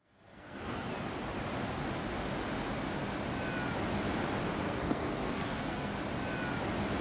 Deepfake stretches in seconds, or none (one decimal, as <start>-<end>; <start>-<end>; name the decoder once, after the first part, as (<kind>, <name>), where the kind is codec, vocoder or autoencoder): 0.0-0.9 (codec, SNAC); 4.6-5.9